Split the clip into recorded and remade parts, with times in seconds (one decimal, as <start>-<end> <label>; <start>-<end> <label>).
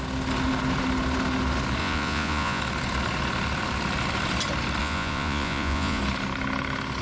0.0-1.8 recorded; 1.8-2.6 remade; 2.6-4.8 recorded; 4.8-6.0 remade; 6.0-7.0 recorded